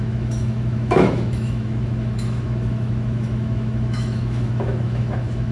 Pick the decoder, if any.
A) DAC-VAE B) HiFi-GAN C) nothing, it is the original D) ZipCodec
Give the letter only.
A